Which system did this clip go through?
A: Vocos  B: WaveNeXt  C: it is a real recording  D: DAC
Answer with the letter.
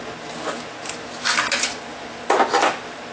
C